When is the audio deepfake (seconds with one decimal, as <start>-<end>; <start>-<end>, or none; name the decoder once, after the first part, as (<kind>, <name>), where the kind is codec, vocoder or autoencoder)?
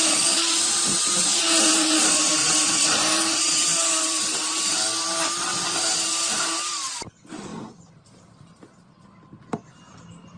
0.0-4.3 (vocoder, BigVGAN v2); 5.5-6.7